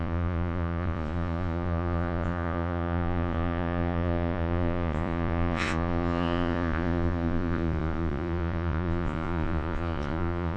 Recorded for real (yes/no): no